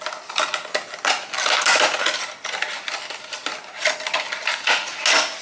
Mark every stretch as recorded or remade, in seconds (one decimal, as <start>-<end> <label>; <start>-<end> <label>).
0.0-5.4 recorded

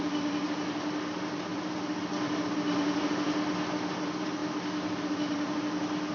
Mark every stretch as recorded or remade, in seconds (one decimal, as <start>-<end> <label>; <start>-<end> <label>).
0.0-6.1 recorded

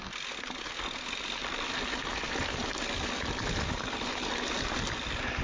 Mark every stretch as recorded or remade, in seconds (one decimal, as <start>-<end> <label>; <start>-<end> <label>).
0.0-5.4 recorded

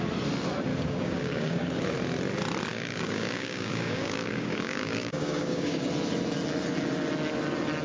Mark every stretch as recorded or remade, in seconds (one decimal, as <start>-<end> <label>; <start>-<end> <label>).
0.0-0.7 recorded; 0.7-1.7 remade; 1.7-2.7 recorded; 2.7-5.9 remade; 5.9-7.8 recorded

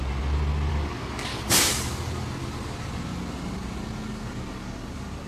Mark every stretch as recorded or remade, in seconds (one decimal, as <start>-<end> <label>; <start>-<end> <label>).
0.0-0.7 recorded; 0.7-1.3 remade; 1.3-4.5 recorded; 4.5-5.3 remade

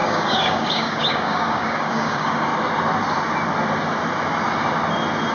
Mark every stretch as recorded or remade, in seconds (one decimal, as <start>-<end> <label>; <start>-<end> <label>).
0.0-2.5 remade; 2.5-5.3 recorded

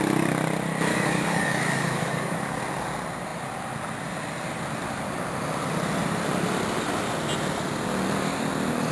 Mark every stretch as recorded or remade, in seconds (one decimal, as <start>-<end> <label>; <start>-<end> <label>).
0.0-0.9 recorded; 0.9-2.6 remade; 2.6-8.9 recorded

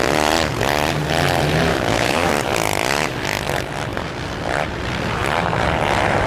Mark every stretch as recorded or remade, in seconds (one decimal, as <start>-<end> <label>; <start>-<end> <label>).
0.0-1.7 recorded; 1.7-2.3 remade; 2.3-6.3 recorded